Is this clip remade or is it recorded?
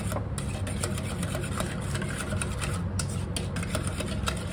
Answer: recorded